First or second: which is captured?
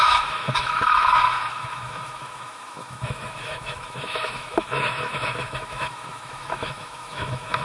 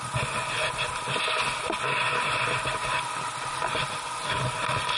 second